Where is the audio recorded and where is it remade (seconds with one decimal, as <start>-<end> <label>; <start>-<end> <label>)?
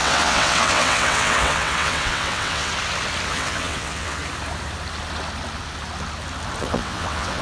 0.0-2.7 remade; 2.7-3.3 recorded; 3.3-4.2 remade; 4.2-6.6 recorded; 6.6-7.4 remade